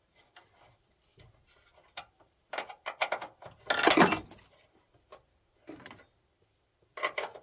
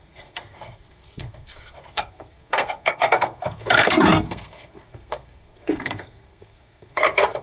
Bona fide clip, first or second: first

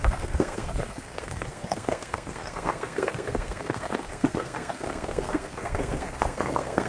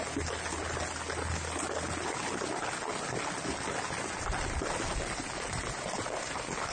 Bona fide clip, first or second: second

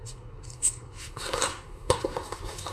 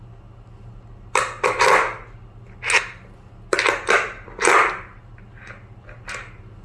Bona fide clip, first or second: second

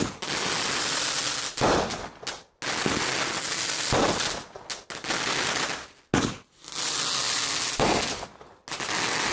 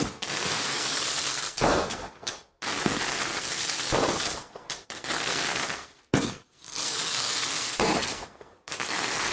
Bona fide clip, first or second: first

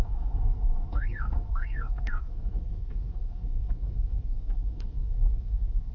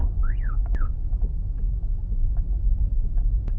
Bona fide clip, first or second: second